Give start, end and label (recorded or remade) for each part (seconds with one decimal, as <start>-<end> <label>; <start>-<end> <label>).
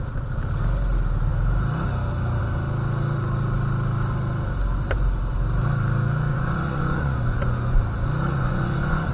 0.0-6.3 recorded; 6.3-7.8 remade; 7.8-8.3 recorded; 8.3-9.1 remade